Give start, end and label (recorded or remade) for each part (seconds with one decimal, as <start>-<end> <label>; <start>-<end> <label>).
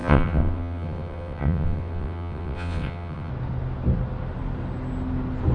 0.0-3.3 remade; 3.3-5.5 recorded